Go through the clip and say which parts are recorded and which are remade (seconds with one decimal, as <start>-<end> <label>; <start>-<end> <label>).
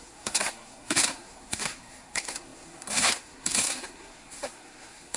0.0-5.2 remade